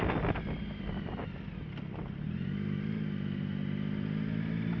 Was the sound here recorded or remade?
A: recorded